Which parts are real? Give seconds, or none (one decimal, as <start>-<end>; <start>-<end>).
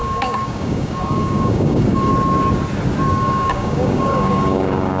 2.1-3.1